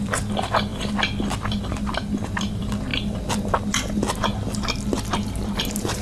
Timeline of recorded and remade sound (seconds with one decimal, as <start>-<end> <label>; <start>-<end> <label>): 0.0-6.0 recorded